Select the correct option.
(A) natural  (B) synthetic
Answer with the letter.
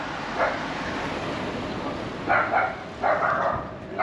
A